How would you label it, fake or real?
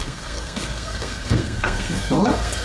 fake